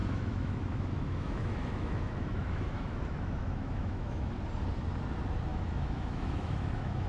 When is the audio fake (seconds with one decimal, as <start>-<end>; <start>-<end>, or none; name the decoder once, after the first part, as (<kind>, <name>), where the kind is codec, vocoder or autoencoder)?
0.0-4.3 (autoencoder, DAC-VAE); 5.5-7.1